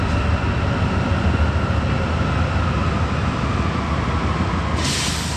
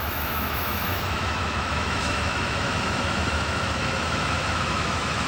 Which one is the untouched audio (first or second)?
first